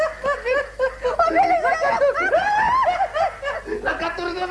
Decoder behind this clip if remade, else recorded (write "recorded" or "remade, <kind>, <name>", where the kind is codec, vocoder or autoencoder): recorded